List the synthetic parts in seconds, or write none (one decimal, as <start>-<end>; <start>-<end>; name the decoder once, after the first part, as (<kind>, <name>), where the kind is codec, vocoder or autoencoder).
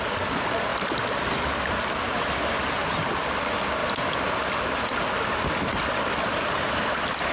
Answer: none